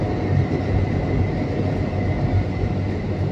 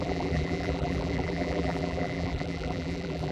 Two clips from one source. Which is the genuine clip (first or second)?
first